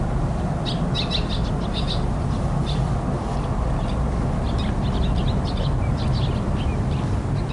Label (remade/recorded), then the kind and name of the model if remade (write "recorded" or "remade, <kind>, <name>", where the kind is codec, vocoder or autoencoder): recorded